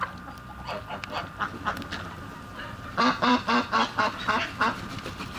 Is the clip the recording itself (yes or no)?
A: yes